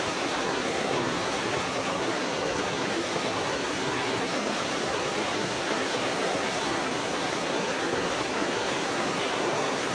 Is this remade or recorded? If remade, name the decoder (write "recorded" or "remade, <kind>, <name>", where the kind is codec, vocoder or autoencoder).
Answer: remade, codec, SNAC